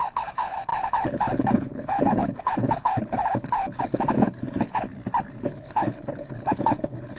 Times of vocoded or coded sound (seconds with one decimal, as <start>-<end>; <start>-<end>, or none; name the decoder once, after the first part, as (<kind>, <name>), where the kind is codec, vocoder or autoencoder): 0.0-4.9 (codec, HILCodec); 5.4-7.2